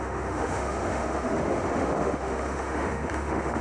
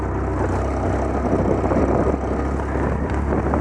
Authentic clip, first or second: second